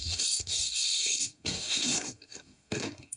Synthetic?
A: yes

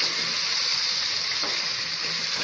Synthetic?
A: no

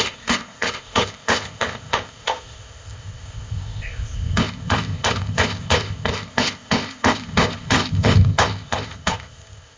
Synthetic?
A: yes